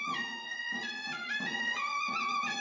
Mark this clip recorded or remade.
remade